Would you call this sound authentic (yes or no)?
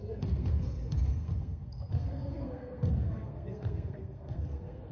no